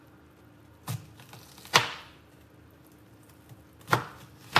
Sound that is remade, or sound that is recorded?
recorded